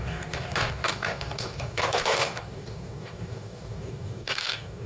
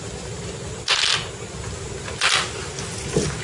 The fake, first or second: first